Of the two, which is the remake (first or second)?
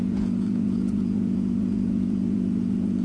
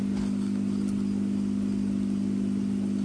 first